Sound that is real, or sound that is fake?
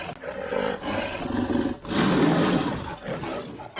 real